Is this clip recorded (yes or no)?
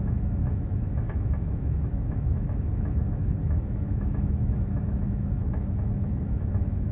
no